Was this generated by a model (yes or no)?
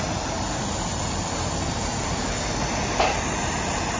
yes